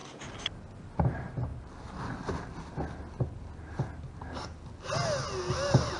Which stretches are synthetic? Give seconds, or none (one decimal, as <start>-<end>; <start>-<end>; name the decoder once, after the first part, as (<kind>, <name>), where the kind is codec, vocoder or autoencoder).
none